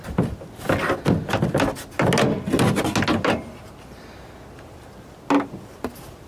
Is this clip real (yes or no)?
yes